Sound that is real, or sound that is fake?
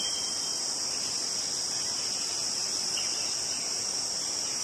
real